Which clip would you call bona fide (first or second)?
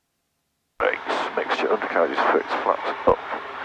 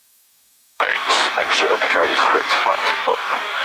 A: first